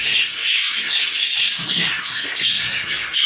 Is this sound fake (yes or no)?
yes